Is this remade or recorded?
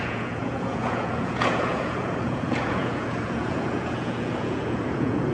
remade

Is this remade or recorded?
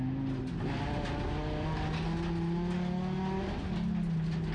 recorded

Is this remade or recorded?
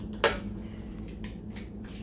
recorded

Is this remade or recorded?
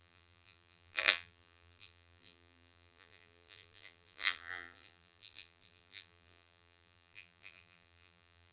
remade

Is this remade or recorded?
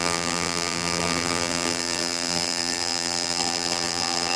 remade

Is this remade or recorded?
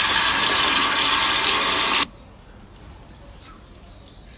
recorded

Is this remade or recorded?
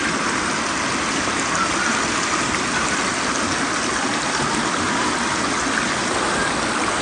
recorded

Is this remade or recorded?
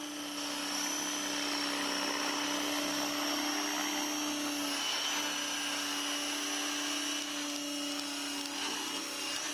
recorded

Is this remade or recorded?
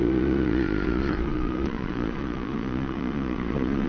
remade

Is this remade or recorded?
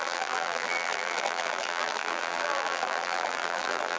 remade